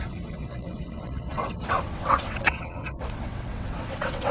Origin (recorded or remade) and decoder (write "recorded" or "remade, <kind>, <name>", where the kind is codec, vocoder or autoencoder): remade, vocoder, WaveNeXt